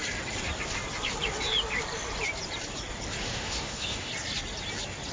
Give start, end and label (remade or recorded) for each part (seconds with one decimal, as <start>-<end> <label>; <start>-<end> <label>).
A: 0.0-3.2 recorded; 3.2-4.1 remade; 4.1-5.1 recorded